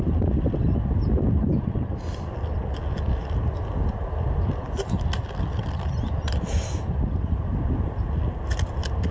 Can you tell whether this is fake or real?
real